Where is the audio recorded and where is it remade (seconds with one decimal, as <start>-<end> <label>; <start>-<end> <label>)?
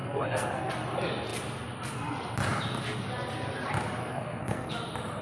0.0-0.7 remade; 0.7-4.0 recorded; 4.0-4.7 remade; 4.7-5.2 recorded